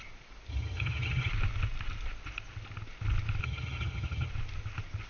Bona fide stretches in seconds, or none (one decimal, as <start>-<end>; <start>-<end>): 0.0-0.5; 1.3-3.4; 4.3-5.1